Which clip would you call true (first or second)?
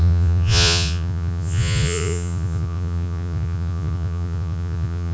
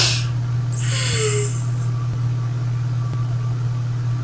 second